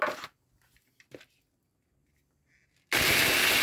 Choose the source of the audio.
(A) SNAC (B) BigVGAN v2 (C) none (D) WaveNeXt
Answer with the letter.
C